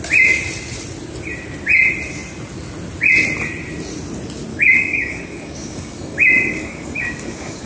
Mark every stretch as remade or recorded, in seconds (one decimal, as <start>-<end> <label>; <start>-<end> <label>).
0.0-4.5 recorded; 4.5-7.7 remade